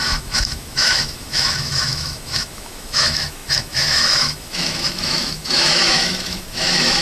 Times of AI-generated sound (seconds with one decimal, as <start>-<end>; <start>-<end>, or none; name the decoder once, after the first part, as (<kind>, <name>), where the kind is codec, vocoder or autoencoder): 0.0-7.0 (autoencoder, DAC-VAE)